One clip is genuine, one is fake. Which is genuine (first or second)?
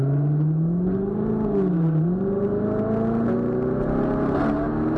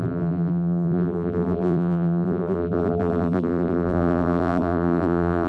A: first